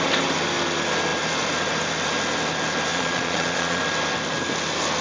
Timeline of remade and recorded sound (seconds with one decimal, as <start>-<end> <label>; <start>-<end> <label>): 0.0-2.9 recorded; 2.9-3.8 remade; 3.8-5.0 recorded